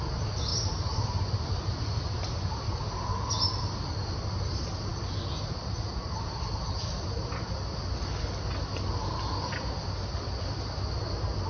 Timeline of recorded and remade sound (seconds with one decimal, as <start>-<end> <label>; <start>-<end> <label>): 0.0-0.5 recorded; 0.5-1.9 remade; 1.9-11.5 recorded